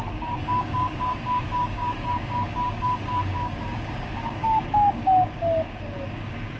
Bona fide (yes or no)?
no